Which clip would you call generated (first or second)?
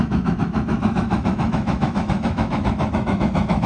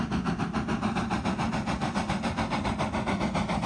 first